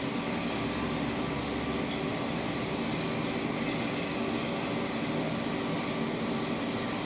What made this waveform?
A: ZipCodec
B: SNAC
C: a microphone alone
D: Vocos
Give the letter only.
C